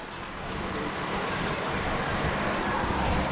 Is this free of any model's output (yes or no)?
yes